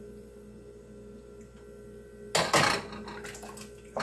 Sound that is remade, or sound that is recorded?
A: recorded